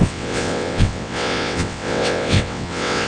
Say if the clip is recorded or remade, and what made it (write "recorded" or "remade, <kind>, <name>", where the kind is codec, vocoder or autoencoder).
remade, vocoder, WaveNeXt